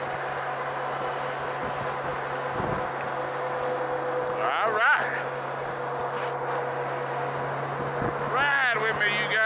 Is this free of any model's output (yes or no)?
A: yes